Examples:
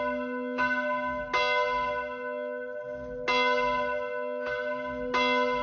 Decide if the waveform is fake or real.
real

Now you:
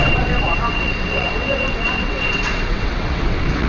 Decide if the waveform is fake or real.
fake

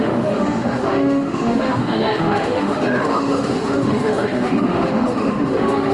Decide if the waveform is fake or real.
fake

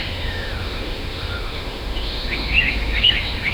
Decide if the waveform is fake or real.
fake